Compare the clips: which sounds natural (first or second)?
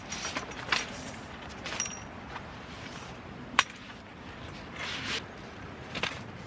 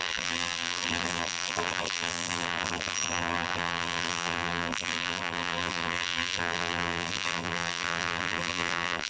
first